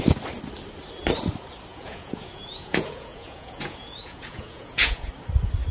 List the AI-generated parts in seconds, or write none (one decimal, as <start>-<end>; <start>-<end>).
1.7-5.1